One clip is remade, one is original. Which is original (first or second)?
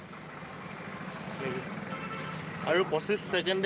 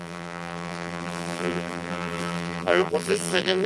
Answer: first